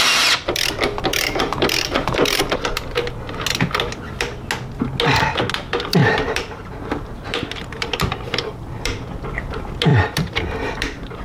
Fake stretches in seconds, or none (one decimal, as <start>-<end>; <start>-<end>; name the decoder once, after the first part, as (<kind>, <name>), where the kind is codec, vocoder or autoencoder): 1.1-2.4 (vocoder, BigVGAN v2); 6.0-9.1; 9.9-11.2